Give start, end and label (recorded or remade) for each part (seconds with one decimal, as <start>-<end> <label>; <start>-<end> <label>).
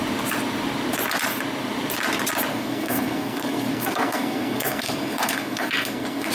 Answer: 0.0-2.5 recorded; 2.5-6.3 remade